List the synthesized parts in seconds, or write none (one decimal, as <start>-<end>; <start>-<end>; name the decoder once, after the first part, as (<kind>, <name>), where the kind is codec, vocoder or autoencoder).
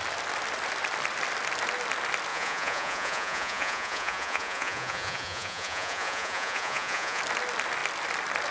2.3-7.2 (vocoder, Vocos)